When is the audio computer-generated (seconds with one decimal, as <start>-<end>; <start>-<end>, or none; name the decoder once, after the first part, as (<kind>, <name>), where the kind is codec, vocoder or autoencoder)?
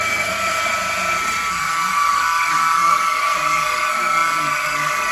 0.0-0.7 (codec, SNAC); 1.5-5.1